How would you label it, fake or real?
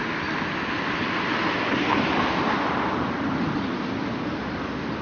real